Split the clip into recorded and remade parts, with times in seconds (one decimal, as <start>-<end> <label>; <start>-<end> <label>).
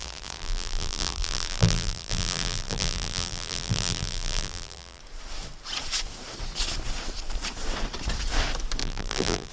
0.0-5.0 remade; 5.0-8.8 recorded; 8.8-9.5 remade